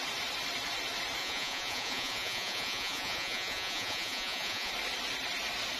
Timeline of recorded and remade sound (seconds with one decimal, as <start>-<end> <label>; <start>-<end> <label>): 0.0-1.2 recorded; 1.2-4.7 remade; 4.7-5.8 recorded